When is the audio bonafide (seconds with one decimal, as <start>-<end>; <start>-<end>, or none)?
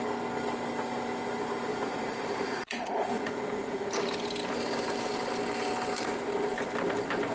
0.0-1.7; 3.9-7.3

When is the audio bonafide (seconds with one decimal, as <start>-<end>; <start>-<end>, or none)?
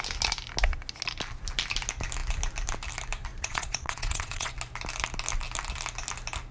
0.0-3.3; 4.5-6.5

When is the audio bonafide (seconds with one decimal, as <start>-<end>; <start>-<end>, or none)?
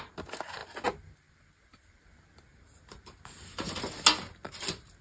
0.0-5.0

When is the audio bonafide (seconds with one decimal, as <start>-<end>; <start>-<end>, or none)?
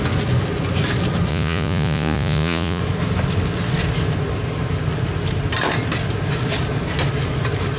0.0-1.3; 2.8-7.8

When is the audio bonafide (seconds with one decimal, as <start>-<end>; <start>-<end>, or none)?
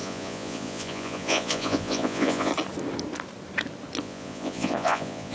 2.5-4.0